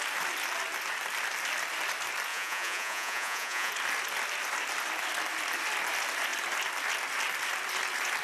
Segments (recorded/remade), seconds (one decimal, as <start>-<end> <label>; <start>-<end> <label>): 0.0-2.3 recorded; 2.3-3.7 remade; 3.7-8.2 recorded